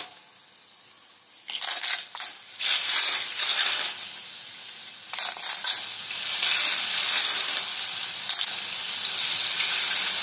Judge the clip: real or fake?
real